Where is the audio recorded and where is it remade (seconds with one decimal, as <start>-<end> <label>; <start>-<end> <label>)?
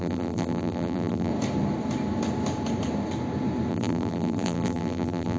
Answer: 0.0-1.3 remade; 1.3-3.7 recorded; 3.7-5.4 remade